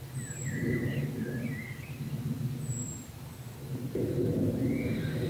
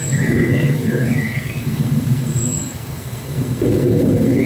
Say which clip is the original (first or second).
first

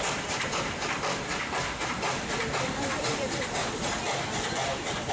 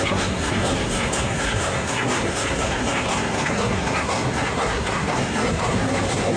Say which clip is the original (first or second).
first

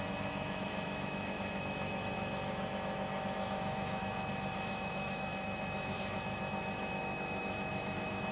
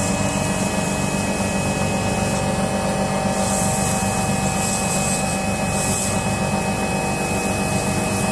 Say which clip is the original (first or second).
second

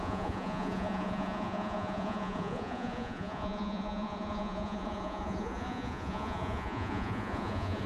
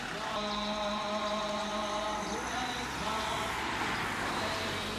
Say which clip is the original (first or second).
second